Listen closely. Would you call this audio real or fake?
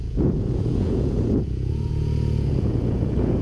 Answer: fake